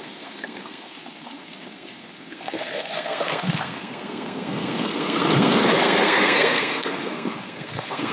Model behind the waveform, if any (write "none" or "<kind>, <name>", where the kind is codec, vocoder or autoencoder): codec, SNAC